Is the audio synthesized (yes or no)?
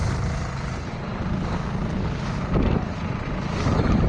no